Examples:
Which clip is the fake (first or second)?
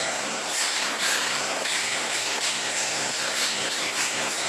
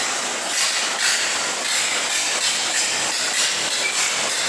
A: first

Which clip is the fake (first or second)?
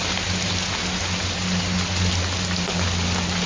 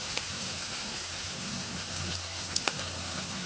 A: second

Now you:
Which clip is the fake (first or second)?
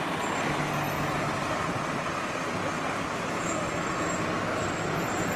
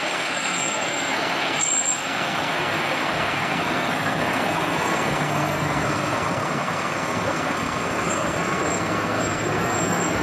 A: second